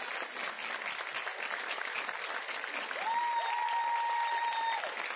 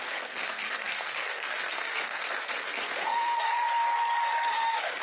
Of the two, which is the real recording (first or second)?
first